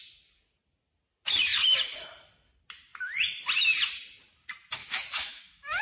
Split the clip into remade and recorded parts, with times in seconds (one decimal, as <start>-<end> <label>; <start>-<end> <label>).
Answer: 0.0-4.8 recorded; 4.8-5.8 remade